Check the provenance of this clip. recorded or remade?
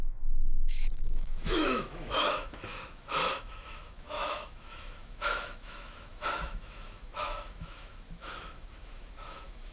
remade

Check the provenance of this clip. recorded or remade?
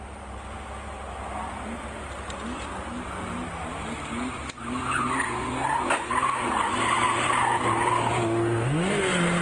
recorded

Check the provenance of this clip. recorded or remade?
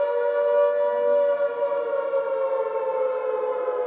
recorded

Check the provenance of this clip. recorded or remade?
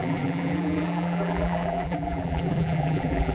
remade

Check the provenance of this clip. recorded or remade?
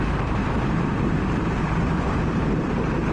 remade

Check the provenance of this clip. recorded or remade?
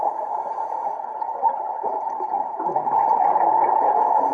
remade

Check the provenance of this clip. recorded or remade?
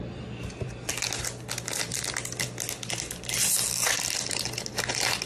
recorded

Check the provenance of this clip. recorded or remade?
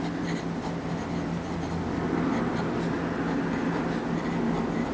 recorded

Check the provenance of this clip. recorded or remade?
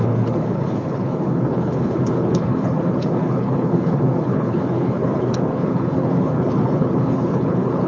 remade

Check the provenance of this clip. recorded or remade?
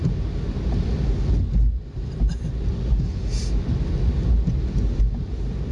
recorded